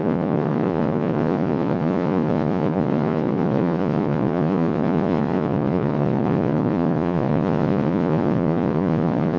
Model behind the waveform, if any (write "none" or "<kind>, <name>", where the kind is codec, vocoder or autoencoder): vocoder, Vocos